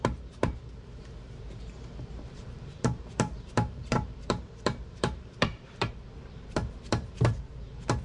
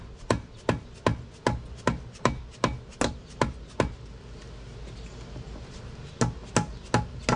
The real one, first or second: second